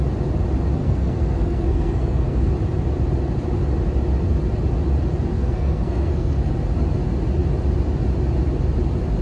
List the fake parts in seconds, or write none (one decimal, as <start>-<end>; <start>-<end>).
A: 0.8-2.5; 5.3-6.5